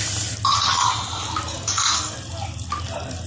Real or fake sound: real